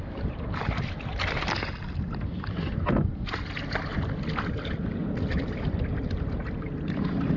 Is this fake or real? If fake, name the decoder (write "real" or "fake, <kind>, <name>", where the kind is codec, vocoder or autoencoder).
real